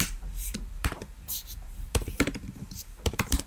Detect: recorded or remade remade